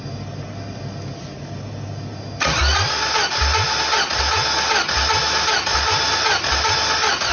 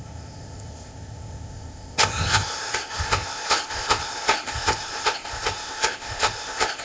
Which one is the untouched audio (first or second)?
first